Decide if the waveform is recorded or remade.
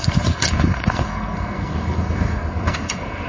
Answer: remade